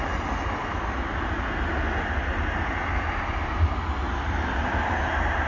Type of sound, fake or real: real